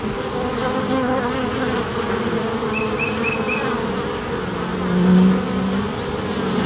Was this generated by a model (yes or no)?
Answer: no